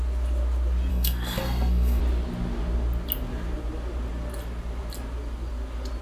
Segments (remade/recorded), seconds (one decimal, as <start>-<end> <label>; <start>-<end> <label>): 0.0-0.9 recorded; 0.9-2.0 remade; 2.0-6.0 recorded